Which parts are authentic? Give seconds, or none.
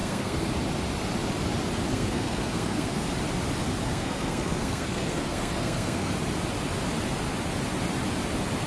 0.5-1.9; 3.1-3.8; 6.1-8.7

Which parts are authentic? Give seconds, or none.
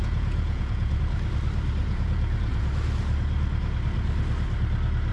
1.0-1.8; 2.7-5.1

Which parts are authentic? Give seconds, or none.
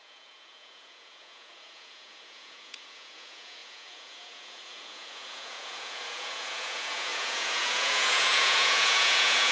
none